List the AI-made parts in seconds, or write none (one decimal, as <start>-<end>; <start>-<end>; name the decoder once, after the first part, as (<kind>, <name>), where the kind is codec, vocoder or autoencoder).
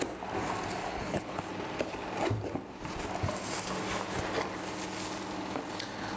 0.8-1.5 (codec, HILCodec)